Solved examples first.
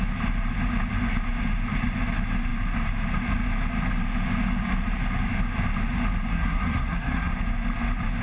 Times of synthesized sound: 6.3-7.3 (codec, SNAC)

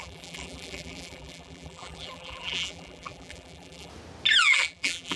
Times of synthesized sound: 0.0-3.9 (vocoder, BigVGAN v2); 4.4-5.2

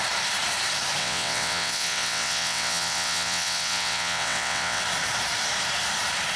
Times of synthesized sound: 1.0-4.8 (vocoder, WaveNeXt)

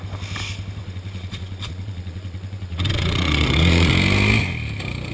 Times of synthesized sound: 0.8-3.9 (vocoder, Vocos)

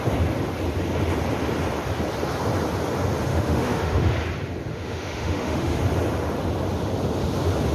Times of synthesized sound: 3.3-4.1 (autoencoder, DAC-VAE); 4.7-5.8

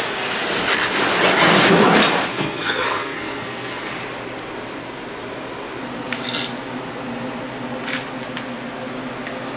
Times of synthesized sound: 2.3-3.9 (codec, SNAC)